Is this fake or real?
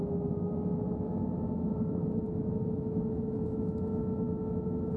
fake